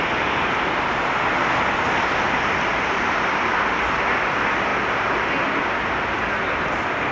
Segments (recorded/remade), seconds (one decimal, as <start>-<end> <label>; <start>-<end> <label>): 0.0-7.1 recorded